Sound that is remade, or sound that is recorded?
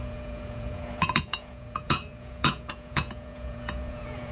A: remade